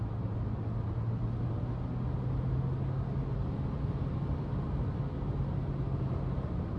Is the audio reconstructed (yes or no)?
no